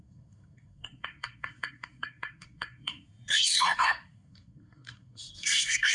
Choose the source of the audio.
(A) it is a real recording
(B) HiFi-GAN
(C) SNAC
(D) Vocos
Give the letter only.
C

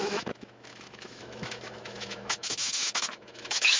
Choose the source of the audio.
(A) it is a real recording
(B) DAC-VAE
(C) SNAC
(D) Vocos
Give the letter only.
B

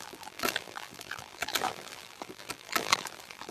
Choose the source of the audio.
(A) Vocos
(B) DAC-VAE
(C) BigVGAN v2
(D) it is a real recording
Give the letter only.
C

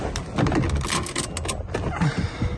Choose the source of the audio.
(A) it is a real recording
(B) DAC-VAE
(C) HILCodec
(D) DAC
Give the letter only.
A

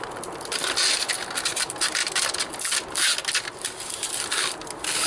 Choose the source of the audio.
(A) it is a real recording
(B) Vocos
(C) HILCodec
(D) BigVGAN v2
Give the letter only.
A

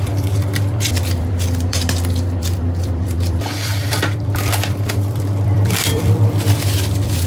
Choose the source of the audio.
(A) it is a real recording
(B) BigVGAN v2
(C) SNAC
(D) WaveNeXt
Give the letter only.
B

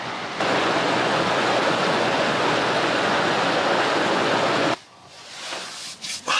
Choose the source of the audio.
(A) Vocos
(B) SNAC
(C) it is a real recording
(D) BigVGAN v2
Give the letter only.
A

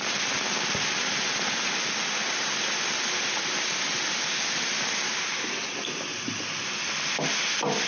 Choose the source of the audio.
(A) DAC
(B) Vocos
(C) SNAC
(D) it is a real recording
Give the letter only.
D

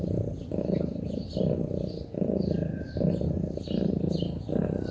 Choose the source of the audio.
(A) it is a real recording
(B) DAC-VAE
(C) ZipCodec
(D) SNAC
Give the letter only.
A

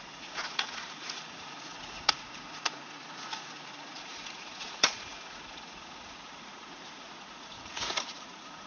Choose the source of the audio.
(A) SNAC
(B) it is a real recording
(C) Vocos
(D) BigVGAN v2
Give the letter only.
C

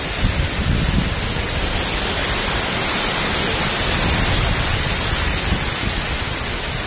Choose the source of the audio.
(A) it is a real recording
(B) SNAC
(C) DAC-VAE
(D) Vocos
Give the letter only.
A